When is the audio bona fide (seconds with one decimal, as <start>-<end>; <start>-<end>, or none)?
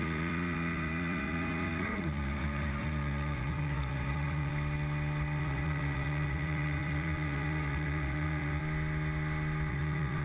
4.5-5.4; 8.6-9.7